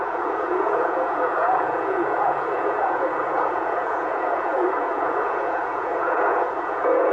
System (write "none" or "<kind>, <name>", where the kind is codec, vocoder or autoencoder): vocoder, Vocos